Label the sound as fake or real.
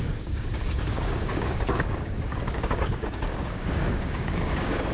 fake